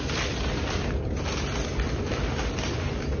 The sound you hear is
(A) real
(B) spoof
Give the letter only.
A